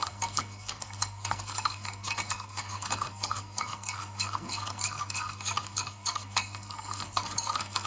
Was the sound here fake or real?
fake